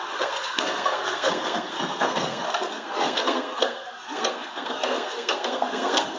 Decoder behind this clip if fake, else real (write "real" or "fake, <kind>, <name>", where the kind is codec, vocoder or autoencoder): fake, codec, SNAC